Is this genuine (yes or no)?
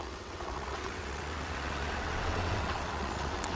no